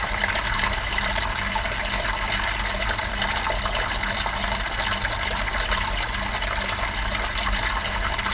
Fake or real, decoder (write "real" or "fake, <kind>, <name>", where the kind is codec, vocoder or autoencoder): real